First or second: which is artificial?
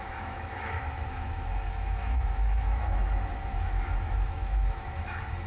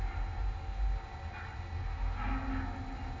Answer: first